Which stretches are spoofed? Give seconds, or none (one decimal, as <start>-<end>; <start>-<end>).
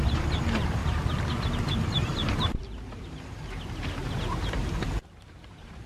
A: 0.0-0.8; 1.3-2.6; 4.0-5.9